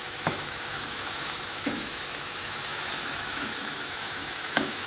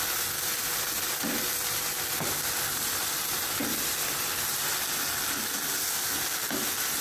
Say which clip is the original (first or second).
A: second